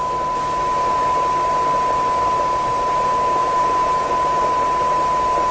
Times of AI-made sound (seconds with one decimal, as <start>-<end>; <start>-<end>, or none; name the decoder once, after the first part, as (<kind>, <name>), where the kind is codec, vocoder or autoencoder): 3.4-4.1 (vocoder, Vocos)